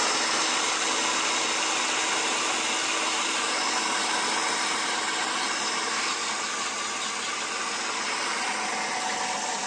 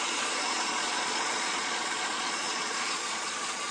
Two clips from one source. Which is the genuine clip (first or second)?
first